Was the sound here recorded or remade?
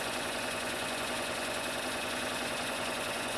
remade